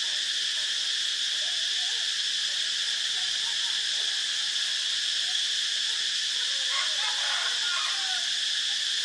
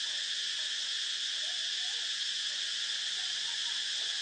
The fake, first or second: second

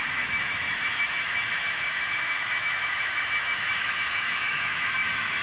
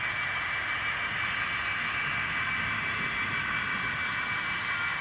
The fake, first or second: first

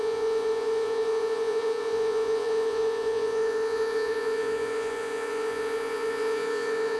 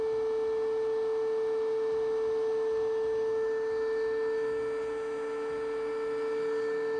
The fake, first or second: first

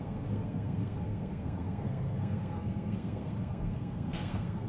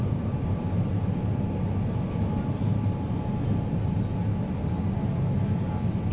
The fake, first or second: first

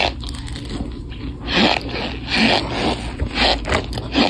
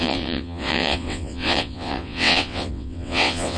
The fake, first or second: second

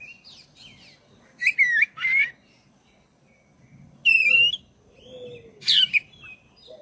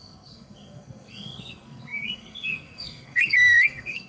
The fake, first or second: second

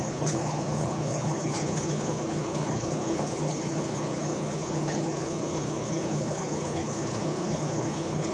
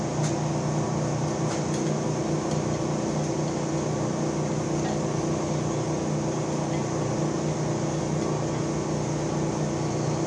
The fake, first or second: first